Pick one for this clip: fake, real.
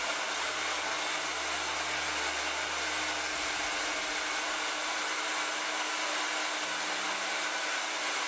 real